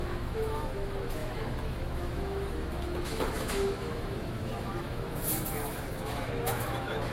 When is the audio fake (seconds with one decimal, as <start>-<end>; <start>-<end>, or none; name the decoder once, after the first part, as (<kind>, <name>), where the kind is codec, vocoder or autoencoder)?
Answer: 0.0-7.1 (autoencoder, DAC-VAE)